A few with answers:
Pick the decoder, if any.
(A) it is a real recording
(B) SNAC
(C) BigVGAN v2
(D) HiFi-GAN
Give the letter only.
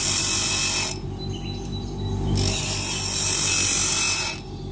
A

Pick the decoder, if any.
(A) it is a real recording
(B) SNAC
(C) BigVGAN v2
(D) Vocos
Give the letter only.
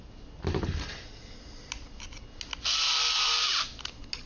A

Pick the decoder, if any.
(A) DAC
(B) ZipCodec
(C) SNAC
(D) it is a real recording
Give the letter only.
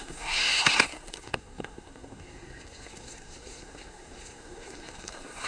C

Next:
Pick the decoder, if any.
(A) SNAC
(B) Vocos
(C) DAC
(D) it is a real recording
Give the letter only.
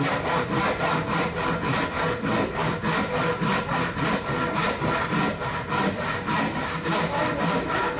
D